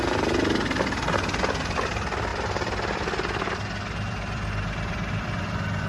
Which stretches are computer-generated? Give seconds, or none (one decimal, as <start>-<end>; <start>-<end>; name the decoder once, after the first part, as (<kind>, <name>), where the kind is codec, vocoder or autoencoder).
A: 2.3-5.9 (vocoder, BigVGAN v2)